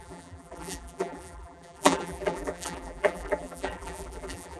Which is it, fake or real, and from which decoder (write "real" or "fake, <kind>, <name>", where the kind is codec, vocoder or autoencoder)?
fake, vocoder, BigVGAN v2